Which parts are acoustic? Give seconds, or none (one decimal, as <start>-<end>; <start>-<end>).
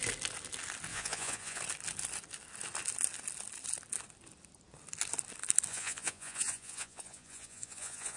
0.0-0.9; 1.6-5.7